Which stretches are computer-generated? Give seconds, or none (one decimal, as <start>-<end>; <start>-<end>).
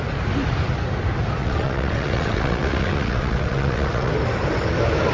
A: 1.4-4.1